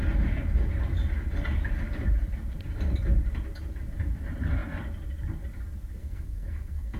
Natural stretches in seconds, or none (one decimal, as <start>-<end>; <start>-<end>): 0.0-6.0